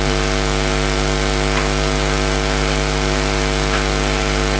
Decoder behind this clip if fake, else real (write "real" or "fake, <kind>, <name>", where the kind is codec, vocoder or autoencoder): real